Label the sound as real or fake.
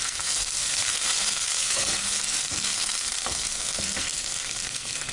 fake